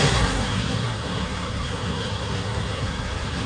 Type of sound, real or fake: fake